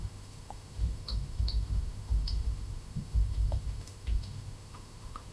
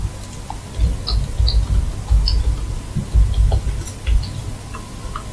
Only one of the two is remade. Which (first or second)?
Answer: first